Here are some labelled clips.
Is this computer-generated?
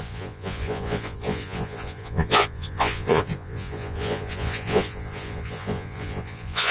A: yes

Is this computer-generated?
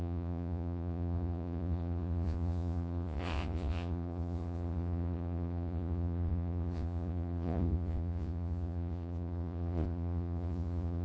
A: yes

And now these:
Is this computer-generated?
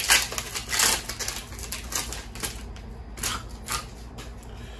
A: no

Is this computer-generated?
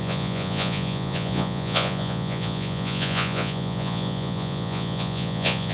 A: yes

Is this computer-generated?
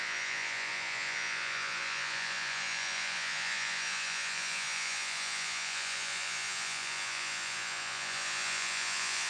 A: yes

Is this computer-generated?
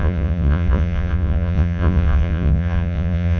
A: yes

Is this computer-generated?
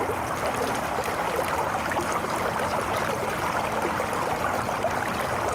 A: no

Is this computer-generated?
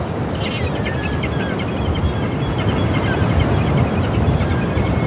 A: no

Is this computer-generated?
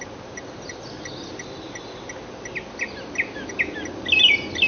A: no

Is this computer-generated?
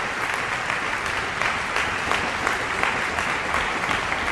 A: no